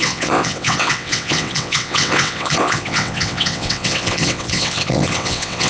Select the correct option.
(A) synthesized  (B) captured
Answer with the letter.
A